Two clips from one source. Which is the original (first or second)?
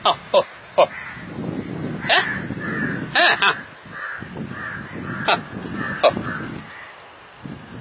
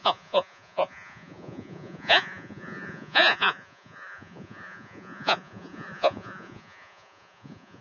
first